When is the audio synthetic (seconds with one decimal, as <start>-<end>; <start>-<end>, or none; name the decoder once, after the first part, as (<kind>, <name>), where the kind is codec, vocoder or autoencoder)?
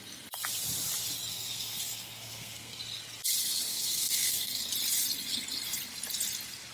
1.3-2.8 (codec, SNAC); 3.7-4.7